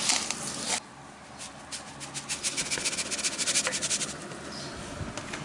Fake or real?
real